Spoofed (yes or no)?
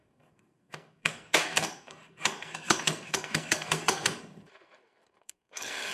yes